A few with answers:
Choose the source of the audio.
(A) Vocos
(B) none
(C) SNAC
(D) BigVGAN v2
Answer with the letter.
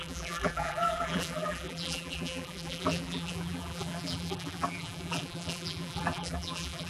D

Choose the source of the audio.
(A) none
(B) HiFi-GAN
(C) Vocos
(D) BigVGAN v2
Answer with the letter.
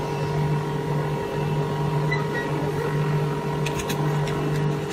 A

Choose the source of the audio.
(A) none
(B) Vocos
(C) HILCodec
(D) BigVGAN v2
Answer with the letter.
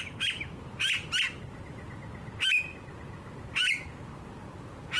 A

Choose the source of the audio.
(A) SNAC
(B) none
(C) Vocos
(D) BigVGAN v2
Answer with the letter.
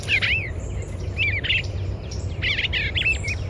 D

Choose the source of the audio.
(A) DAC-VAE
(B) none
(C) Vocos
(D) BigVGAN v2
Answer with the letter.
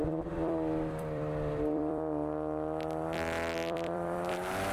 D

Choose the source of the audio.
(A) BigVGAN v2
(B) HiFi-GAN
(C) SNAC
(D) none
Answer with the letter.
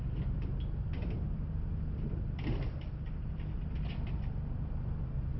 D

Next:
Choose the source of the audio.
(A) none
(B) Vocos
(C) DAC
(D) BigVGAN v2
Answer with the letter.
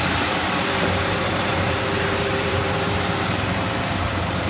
D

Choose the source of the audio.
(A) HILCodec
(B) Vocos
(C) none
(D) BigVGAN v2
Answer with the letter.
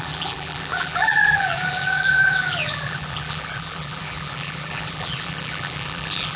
D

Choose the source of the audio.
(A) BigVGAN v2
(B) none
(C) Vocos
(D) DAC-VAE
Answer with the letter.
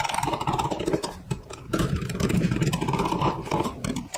A